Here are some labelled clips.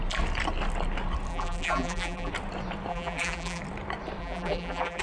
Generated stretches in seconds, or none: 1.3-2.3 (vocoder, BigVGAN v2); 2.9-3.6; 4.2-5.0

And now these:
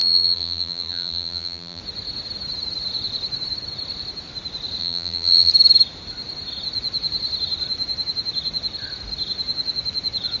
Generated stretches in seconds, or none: 0.0-1.8 (vocoder, BigVGAN v2); 4.8-5.5